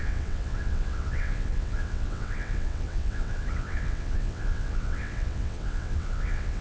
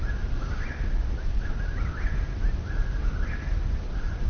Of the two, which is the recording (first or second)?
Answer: second